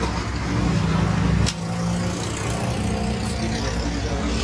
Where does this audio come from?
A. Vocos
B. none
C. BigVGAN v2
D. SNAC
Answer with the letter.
B